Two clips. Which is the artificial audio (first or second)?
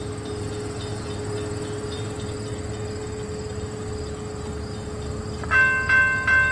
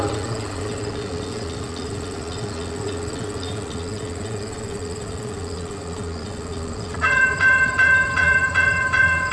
second